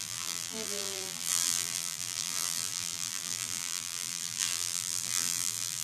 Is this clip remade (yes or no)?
yes